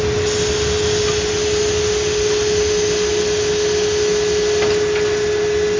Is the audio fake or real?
real